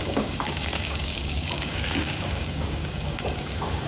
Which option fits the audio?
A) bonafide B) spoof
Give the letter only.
B